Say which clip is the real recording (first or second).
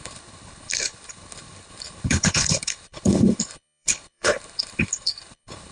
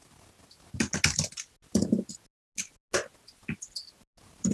second